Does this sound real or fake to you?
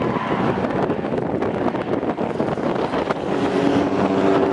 real